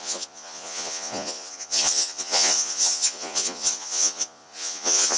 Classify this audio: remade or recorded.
remade